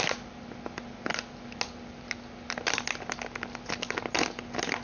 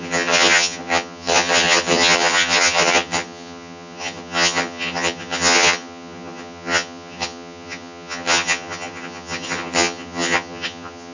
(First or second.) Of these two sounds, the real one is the first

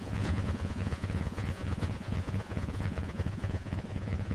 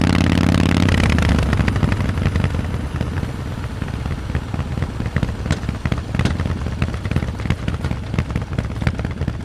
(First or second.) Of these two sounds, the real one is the second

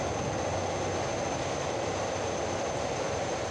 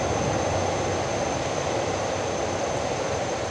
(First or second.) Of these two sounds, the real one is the first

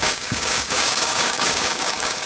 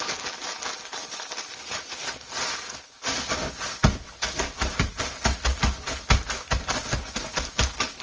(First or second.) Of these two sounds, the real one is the second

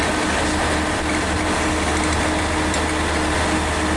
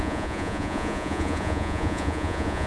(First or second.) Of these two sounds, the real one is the first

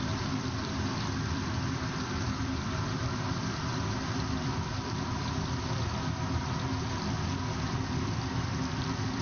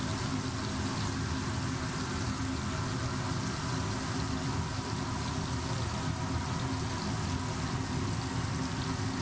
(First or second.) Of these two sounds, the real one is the second